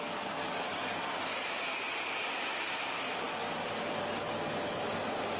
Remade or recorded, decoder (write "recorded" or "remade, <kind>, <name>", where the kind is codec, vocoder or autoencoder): recorded